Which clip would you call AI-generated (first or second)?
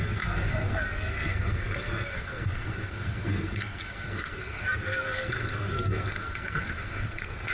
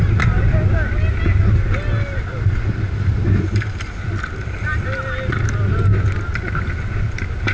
first